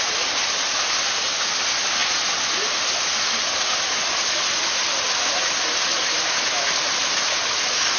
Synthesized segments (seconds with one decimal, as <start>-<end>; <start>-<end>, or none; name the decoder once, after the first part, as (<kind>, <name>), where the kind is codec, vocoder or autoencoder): none